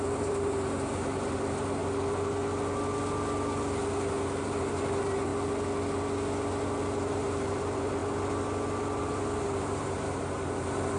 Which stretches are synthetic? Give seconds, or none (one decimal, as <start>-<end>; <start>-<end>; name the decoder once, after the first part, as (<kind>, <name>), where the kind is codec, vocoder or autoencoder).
0.0-1.8 (vocoder, BigVGAN v2); 4.4-5.3; 7.1-8.0; 9.0-11.0